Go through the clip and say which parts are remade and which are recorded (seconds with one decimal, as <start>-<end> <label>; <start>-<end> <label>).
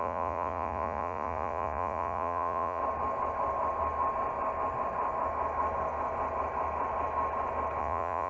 0.0-2.8 remade; 2.8-7.8 recorded; 7.8-8.3 remade